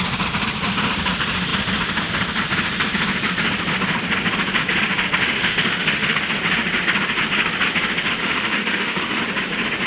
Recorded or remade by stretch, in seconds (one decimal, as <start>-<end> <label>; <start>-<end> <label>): 0.0-5.2 recorded; 5.2-6.2 remade; 6.2-8.2 recorded; 8.2-9.2 remade; 9.2-9.9 recorded